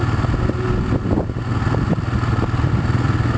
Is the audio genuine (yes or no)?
yes